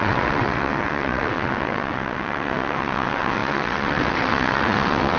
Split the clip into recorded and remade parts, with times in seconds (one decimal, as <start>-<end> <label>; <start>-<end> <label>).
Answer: 0.0-5.2 remade